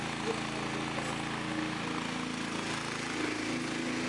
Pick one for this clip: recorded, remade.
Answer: recorded